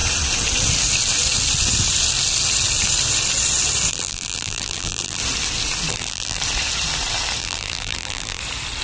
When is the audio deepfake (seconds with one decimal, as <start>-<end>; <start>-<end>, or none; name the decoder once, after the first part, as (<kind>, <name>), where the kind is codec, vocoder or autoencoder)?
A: 3.9-5.2 (vocoder, BigVGAN v2); 5.9-6.4; 7.4-8.4